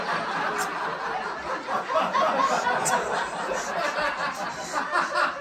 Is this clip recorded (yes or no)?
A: yes